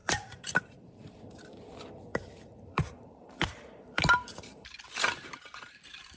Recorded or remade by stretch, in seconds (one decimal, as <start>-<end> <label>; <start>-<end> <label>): 0.0-1.2 remade; 1.2-2.1 recorded; 2.1-5.8 remade; 5.8-6.2 recorded